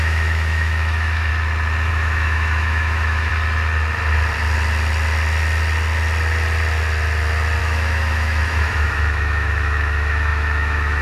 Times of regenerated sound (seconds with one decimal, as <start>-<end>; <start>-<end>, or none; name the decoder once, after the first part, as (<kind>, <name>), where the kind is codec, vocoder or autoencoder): 0.0-1.3 (autoencoder, DAC-VAE); 1.9-3.3; 7.6-11.0